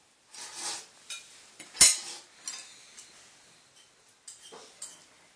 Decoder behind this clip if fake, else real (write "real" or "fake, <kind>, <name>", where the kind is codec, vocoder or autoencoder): real